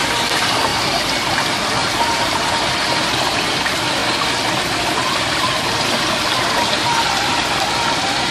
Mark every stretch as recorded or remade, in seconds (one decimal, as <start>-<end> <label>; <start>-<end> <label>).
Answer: 0.0-0.7 recorded; 0.7-1.4 remade; 1.4-1.8 recorded; 1.8-3.4 remade; 3.4-8.3 recorded